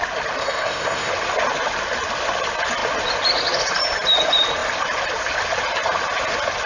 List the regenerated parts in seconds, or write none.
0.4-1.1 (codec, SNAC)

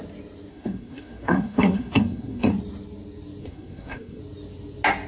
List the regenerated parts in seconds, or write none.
0.5-2.5 (codec, SNAC); 3.4-4.2

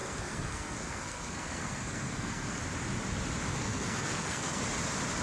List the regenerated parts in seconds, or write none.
0.0-2.6 (codec, SNAC); 3.5-4.6

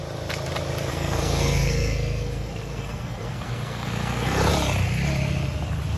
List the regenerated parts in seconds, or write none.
0.9-4.5 (codec, SNAC)